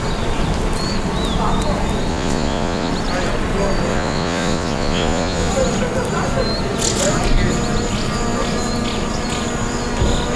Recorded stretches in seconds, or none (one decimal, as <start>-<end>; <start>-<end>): 0.0-2.1; 2.9-3.9; 5.5-10.4